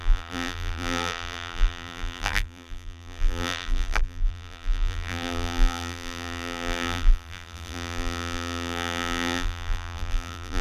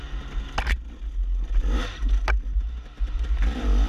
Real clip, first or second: second